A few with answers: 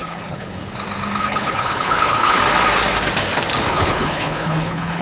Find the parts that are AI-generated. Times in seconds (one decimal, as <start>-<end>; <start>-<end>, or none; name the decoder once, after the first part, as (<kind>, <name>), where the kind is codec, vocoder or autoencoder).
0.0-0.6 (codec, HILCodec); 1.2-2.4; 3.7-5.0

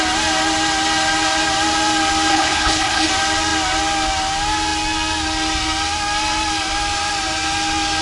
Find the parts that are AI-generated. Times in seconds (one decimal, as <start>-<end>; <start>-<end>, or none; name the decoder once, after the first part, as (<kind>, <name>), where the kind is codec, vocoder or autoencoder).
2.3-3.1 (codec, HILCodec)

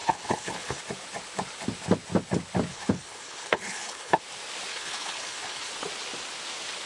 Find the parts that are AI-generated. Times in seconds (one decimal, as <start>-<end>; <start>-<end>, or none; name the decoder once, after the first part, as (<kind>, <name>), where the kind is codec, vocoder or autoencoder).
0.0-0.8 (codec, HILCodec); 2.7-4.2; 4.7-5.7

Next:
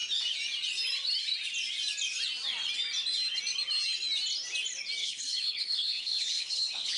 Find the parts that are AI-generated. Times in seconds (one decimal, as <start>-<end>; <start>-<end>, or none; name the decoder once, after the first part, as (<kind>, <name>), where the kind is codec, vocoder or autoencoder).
5.0-7.0 (codec, HILCodec)